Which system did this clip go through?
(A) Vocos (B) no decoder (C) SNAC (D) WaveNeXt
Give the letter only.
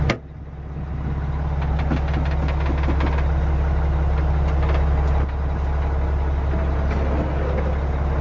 B